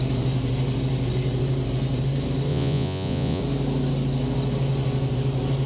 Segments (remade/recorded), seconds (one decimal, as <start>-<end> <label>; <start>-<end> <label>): 0.0-2.5 recorded; 2.5-3.4 remade; 3.4-5.7 recorded